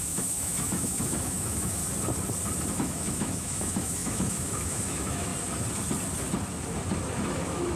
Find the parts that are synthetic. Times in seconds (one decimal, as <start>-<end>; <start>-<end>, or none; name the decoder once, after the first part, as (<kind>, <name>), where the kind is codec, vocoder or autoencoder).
0.0-1.8 (autoencoder, DAC-VAE); 2.7-5.3; 7.3-7.8